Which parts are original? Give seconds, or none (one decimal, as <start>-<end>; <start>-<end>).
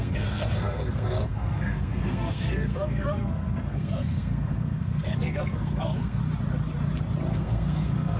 6.2-7.3